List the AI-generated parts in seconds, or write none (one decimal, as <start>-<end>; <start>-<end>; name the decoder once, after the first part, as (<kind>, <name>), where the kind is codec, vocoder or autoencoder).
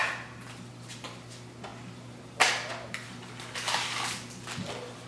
none